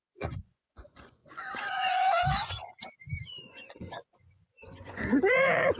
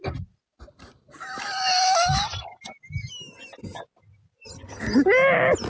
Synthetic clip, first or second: first